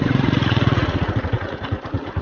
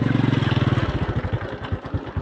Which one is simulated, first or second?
first